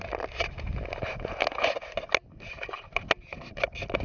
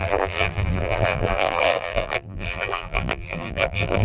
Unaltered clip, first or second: first